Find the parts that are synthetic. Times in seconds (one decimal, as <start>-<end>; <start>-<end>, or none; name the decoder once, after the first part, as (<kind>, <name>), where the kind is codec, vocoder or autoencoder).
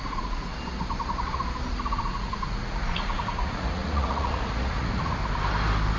0.0-0.5 (vocoder, Vocos); 1.7-5.2